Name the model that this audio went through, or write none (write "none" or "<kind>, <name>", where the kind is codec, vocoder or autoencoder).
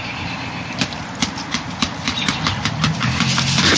none